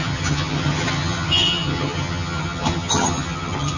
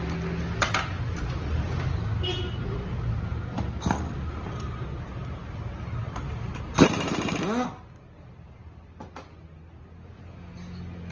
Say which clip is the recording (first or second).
second